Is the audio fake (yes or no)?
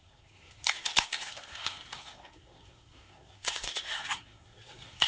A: yes